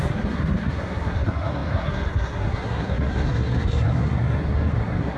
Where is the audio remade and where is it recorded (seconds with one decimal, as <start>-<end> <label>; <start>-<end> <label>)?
0.0-5.2 remade